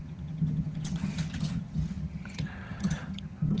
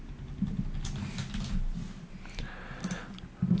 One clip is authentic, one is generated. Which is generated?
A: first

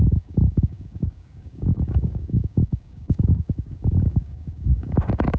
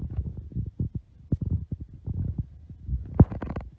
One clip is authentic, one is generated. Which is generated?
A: first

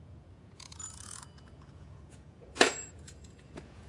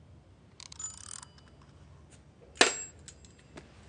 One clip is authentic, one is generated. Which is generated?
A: first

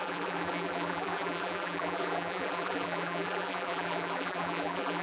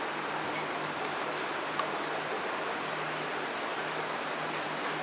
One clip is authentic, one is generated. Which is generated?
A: first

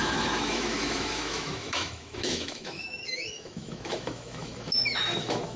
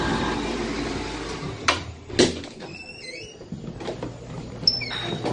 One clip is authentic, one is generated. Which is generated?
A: first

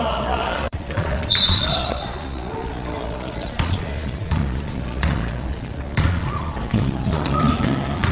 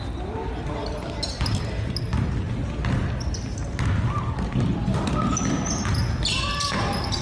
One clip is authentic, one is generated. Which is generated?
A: first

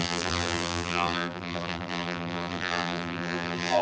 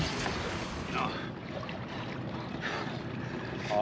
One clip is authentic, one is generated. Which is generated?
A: first